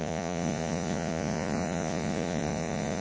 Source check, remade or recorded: remade